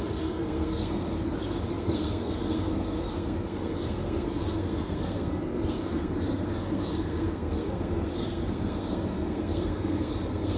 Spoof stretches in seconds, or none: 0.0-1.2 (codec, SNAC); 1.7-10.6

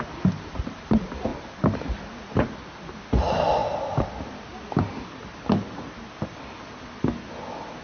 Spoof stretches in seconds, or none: none